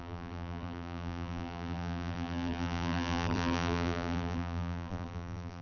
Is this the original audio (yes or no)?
no